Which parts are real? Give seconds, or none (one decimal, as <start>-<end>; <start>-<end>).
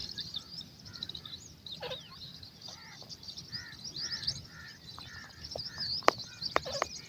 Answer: 1.1-2.3; 2.9-7.1